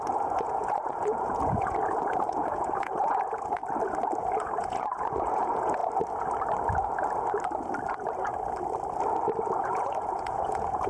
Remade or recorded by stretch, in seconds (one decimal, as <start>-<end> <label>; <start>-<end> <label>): 0.0-3.6 remade; 3.6-4.2 recorded; 4.2-5.8 remade; 5.8-7.9 recorded; 7.9-8.3 remade; 8.3-9.6 recorded; 9.6-10.9 remade